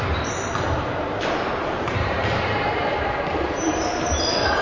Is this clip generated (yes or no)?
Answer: yes